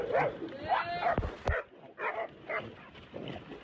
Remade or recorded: recorded